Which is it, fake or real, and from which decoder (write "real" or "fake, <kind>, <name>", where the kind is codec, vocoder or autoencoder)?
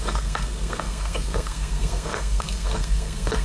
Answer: fake, codec, SNAC